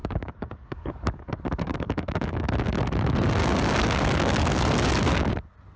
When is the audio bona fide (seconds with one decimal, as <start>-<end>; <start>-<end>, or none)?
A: 2.8-3.4; 5.3-5.8

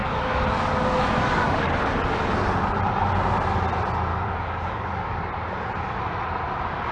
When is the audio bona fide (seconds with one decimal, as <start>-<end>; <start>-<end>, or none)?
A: 1.9-4.1; 5.2-6.9